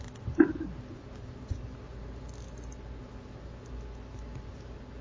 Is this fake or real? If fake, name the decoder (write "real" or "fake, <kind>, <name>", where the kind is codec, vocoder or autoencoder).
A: real